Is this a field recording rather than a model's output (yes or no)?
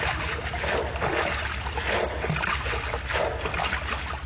yes